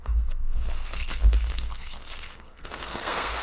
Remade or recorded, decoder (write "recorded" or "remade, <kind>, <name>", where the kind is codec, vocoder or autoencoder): remade, codec, SNAC